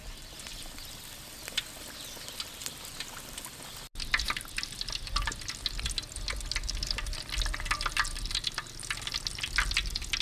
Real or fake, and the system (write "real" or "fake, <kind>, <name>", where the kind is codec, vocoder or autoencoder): real